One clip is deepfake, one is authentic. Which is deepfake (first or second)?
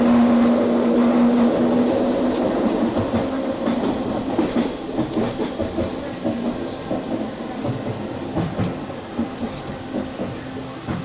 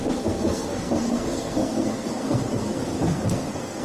second